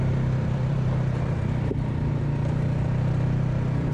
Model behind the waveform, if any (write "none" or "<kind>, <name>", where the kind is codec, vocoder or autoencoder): vocoder, BigVGAN v2